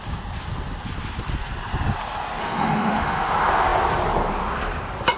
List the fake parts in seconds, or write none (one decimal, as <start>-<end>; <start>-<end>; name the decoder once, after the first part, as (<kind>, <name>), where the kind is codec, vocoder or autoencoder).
2.4-3.3 (autoencoder, DAC-VAE)